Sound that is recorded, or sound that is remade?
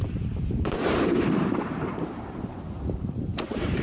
remade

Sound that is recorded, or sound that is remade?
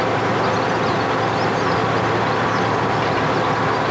recorded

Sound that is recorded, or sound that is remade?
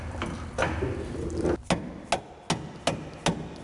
recorded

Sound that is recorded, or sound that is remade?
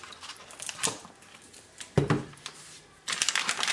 recorded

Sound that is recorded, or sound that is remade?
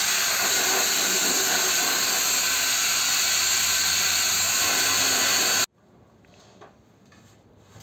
recorded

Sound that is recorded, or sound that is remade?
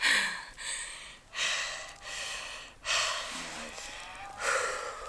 recorded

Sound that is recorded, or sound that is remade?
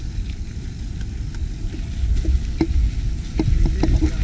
recorded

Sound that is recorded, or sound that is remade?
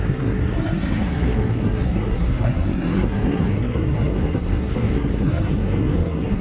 remade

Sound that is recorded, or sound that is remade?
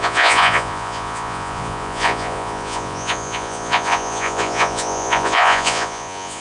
remade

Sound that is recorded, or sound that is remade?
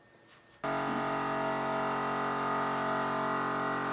recorded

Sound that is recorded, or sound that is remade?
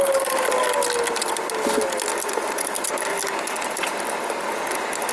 recorded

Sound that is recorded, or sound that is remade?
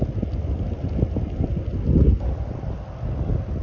recorded